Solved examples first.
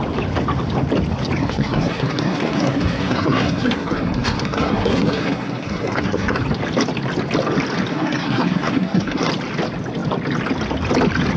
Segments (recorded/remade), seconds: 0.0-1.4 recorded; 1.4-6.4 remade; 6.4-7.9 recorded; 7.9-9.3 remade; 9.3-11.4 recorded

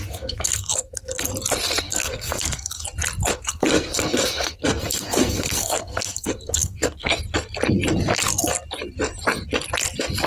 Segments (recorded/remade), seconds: 0.0-1.3 remade; 1.3-1.8 recorded; 1.8-2.8 remade; 2.8-3.3 recorded; 3.3-7.1 remade; 7.1-10.3 recorded

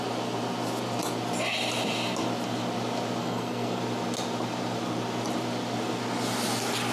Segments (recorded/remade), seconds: 0.0-3.2 recorded; 3.2-3.8 remade; 3.8-6.9 recorded